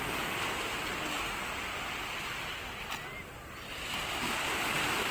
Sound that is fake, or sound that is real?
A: real